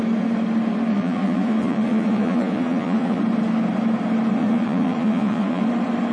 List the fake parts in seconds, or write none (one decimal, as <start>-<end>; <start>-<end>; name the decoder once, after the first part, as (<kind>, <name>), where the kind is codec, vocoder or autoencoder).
0.9-3.2 (vocoder, Vocos); 4.4-5.6